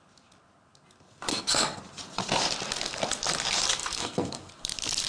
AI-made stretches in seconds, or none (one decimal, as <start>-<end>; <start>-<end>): 1.3-1.8; 3.8-4.5